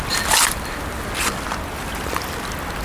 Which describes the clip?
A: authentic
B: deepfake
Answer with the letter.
A